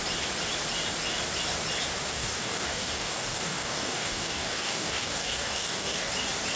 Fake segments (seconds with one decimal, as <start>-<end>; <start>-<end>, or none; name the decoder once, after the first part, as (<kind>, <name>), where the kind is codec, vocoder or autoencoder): 2.1-6.1 (codec, DAC)